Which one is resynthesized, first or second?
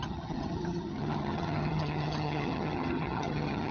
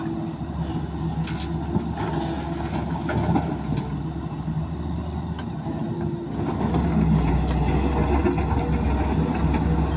first